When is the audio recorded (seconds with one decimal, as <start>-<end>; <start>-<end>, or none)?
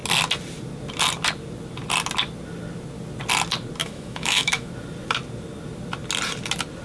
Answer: 0.0-3.8; 4.7-6.8